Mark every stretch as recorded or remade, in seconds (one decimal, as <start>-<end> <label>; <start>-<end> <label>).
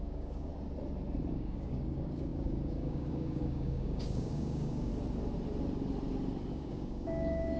0.0-0.5 remade; 0.5-1.3 recorded; 1.3-4.9 remade; 4.9-6.5 recorded; 6.5-7.6 remade